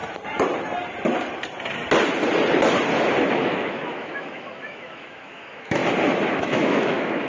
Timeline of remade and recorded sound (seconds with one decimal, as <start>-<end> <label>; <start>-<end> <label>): 0.0-3.3 recorded; 3.3-5.8 remade; 5.8-6.4 recorded; 6.4-7.3 remade